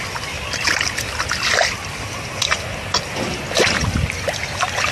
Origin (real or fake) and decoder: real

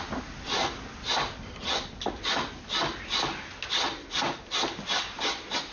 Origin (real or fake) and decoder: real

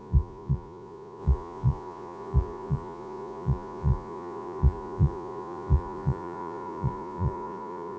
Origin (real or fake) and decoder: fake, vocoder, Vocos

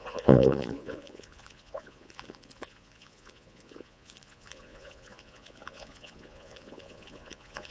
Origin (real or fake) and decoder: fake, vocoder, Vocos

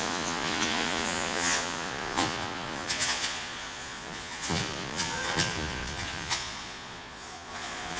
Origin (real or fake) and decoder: fake, vocoder, Vocos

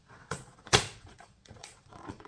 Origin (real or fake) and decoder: fake, vocoder, Vocos